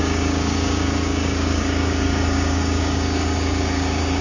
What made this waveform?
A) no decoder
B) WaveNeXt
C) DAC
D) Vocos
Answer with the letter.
C